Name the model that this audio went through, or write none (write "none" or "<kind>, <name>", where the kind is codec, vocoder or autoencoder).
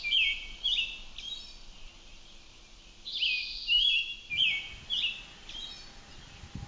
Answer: none